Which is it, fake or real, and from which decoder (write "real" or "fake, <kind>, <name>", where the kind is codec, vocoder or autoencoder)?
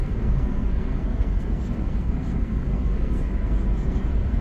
fake, codec, SNAC